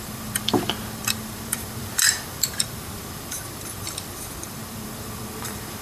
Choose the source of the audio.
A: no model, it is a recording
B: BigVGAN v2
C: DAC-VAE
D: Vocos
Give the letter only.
B